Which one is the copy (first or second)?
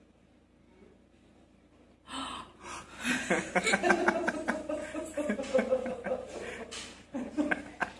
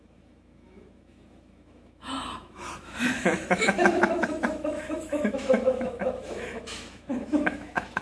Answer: second